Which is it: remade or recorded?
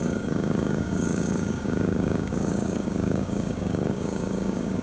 remade